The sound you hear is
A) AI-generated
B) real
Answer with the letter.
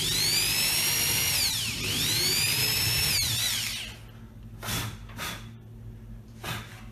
B